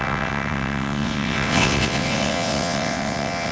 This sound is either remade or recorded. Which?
remade